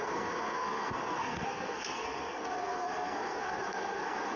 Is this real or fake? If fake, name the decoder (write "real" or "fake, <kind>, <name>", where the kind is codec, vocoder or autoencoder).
fake, codec, SNAC